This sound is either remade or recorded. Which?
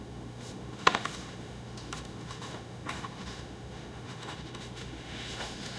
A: remade